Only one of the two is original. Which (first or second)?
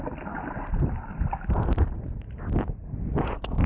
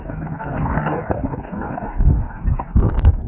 first